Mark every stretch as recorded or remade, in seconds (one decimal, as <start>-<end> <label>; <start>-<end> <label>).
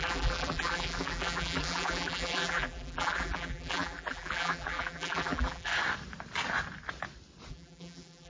0.0-5.7 remade; 5.7-7.5 recorded; 7.5-8.3 remade